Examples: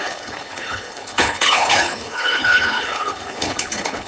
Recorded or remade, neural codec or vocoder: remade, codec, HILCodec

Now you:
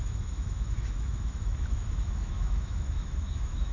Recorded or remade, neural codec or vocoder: remade, autoencoder, DAC-VAE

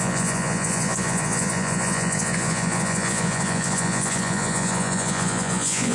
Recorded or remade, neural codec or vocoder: remade, vocoder, Vocos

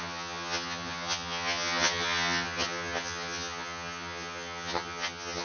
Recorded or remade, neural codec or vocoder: remade, vocoder, HiFi-GAN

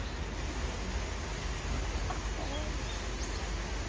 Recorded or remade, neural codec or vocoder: recorded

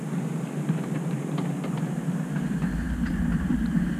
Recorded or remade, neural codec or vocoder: recorded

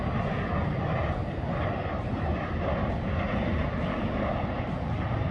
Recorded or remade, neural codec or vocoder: recorded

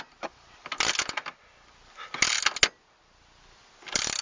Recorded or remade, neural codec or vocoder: recorded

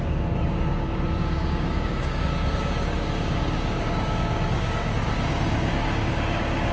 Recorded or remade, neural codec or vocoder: remade, codec, DAC